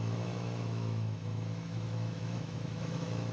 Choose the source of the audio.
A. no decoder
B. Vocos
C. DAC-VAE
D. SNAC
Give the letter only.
C